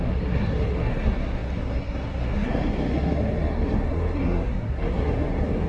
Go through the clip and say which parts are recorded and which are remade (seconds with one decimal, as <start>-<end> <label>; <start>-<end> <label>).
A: 0.0-5.7 remade